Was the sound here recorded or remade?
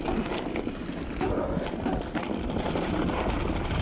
recorded